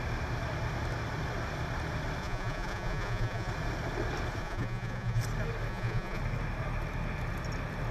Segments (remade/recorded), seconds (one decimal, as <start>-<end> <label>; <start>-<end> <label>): 0.0-2.2 recorded; 2.2-3.5 remade; 3.5-4.4 recorded; 4.4-5.2 remade; 5.2-5.7 recorded; 5.7-6.2 remade; 6.2-7.9 recorded